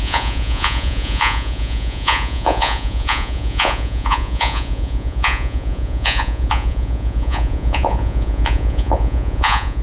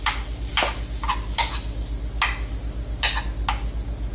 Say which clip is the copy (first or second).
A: first